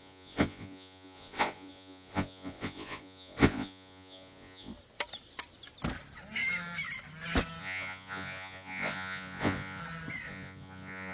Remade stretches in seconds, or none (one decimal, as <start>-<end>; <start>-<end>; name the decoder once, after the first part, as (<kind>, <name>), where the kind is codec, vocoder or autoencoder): 0.0-4.7 (vocoder, Vocos); 7.6-9.8; 10.3-11.1